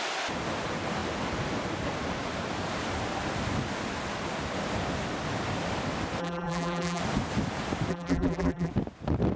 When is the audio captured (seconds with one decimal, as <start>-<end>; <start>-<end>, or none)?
0.0-6.2; 7.0-7.9; 8.7-9.4